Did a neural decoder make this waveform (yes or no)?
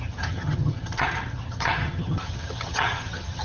yes